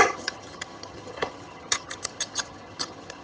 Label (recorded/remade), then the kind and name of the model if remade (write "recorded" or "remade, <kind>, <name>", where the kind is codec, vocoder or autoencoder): remade, vocoder, HiFi-GAN